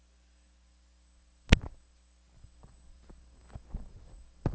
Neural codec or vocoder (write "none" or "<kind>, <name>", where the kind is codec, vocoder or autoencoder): none